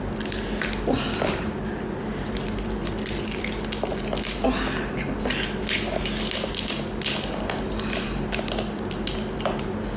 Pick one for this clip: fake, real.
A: real